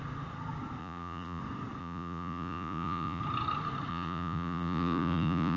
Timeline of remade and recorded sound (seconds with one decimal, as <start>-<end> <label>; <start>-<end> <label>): 0.0-0.8 recorded; 0.8-1.4 remade; 1.4-1.8 recorded; 1.8-3.2 remade; 3.2-3.9 recorded; 3.9-5.6 remade

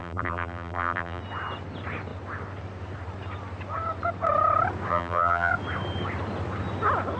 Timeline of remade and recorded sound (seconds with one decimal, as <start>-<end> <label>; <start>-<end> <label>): 0.0-1.2 remade; 1.2-4.9 recorded; 4.9-5.5 remade; 5.5-7.2 recorded